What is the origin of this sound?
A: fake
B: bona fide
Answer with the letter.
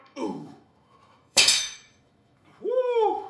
A